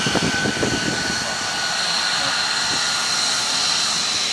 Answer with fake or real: real